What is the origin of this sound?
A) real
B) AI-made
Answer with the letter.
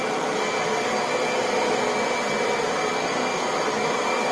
A